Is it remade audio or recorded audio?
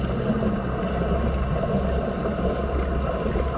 recorded